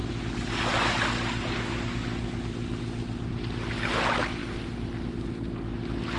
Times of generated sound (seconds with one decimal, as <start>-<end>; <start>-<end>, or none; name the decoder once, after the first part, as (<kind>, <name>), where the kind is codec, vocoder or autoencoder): none